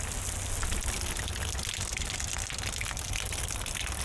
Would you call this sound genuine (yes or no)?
yes